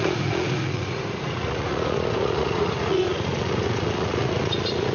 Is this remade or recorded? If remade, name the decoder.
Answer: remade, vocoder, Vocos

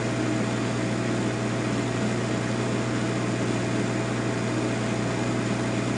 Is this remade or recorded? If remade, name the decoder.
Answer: recorded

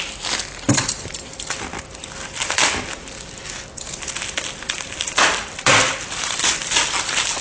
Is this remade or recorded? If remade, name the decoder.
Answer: recorded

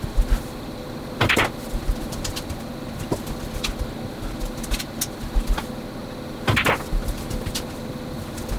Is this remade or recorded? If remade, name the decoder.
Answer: recorded